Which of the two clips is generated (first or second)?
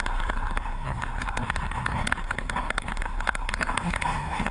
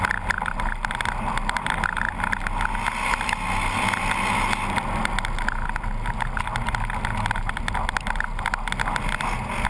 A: first